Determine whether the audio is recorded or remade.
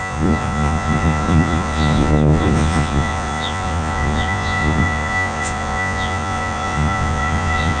remade